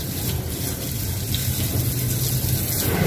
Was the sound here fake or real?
real